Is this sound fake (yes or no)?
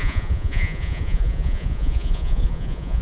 yes